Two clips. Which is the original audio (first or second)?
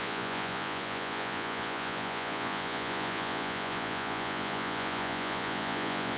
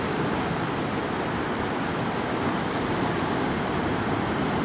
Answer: second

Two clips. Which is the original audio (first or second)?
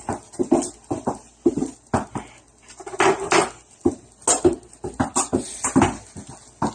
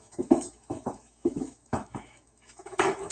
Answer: first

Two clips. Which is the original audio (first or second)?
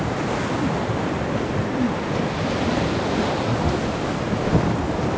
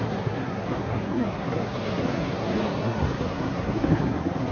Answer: first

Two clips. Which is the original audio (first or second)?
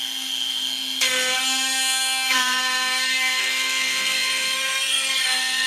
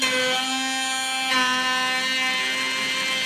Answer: second